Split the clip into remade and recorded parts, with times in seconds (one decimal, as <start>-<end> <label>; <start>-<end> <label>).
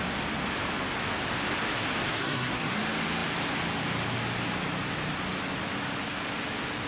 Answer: 0.0-2.1 recorded; 2.1-2.8 remade; 2.8-6.9 recorded